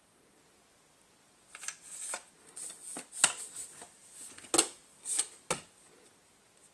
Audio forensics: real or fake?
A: real